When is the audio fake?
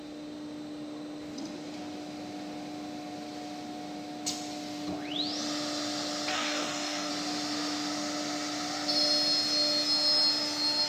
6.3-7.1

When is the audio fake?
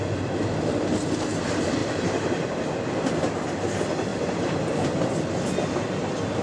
1.8-2.9; 4.1-4.6